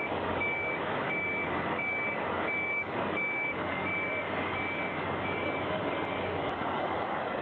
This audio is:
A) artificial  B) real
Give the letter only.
A